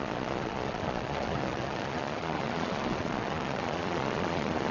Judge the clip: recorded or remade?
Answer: remade